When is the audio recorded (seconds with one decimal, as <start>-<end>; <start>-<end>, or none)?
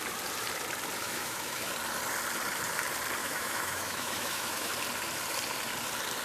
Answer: 0.0-1.0; 1.7-3.2; 4.7-6.2